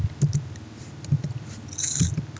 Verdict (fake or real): real